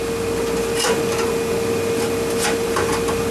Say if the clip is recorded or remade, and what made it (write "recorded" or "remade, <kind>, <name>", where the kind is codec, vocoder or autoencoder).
recorded